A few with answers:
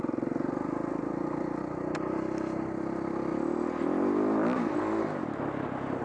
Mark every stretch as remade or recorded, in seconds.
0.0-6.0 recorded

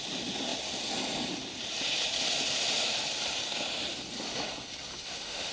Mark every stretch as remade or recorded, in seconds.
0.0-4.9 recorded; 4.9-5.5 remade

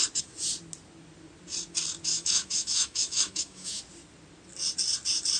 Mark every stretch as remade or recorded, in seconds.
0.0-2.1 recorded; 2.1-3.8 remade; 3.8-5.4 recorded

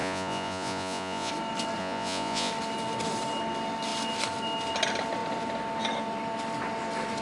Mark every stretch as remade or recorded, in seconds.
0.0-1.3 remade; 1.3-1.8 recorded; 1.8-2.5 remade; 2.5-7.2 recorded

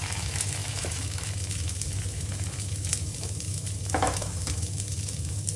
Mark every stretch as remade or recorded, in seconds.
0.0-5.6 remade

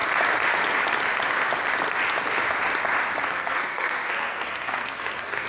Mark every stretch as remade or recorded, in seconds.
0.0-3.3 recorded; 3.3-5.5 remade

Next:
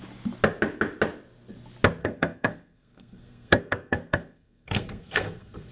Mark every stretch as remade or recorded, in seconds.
0.0-2.0 recorded; 2.0-5.7 remade

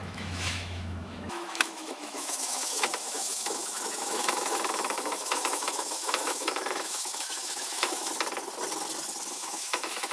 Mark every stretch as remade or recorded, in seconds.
0.0-8.1 remade; 8.1-9.3 recorded; 9.3-10.1 remade